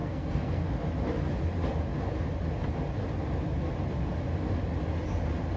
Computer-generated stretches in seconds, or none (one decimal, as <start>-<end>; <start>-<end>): 0.0-0.7